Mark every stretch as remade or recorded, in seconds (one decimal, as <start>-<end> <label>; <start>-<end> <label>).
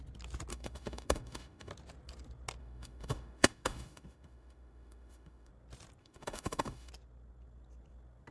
0.0-0.5 recorded; 0.5-1.7 remade; 1.7-2.6 recorded; 2.6-5.5 remade; 5.5-6.0 recorded; 6.0-6.9 remade; 6.9-8.3 recorded